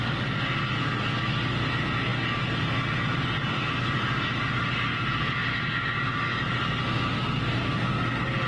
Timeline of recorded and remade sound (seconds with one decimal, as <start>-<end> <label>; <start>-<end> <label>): 0.0-8.5 recorded